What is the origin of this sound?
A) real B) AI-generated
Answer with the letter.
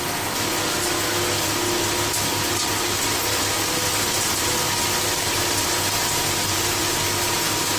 A